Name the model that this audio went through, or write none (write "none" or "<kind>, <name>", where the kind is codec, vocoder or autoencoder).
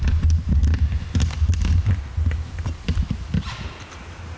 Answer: none